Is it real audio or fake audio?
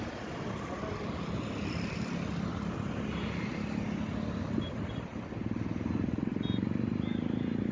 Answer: real